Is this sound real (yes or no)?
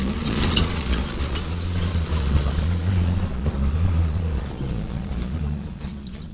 no